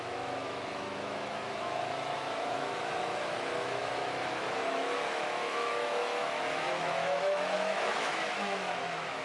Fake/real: fake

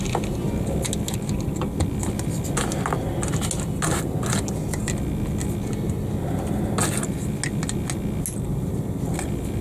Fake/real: real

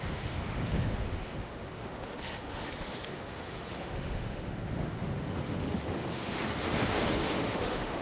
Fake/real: fake